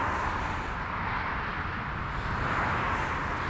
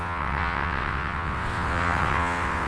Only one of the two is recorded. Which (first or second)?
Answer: first